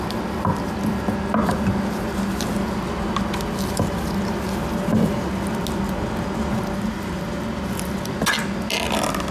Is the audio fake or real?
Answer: real